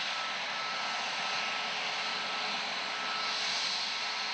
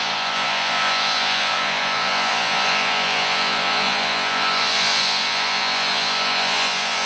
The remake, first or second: second